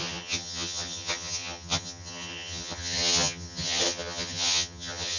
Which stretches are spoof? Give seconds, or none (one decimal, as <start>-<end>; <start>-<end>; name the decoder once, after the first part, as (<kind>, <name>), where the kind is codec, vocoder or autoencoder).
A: 0.0-5.2 (vocoder, HiFi-GAN)